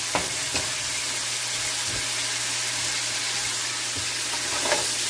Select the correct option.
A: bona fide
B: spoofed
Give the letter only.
A